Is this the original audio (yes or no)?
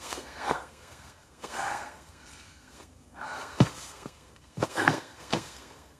no